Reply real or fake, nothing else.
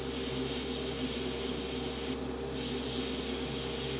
real